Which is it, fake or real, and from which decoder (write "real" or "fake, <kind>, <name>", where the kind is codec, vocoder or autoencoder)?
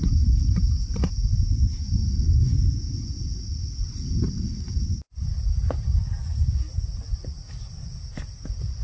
real